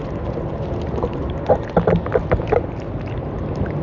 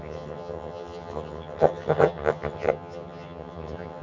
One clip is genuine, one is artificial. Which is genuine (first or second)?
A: first